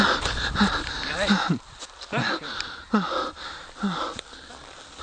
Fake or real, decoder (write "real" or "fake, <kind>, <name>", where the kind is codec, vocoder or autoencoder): real